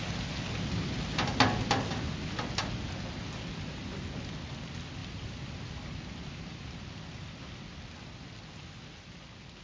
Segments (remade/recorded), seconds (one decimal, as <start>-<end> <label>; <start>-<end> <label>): 0.0-9.6 recorded